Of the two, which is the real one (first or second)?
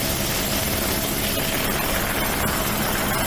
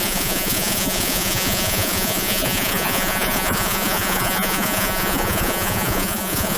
first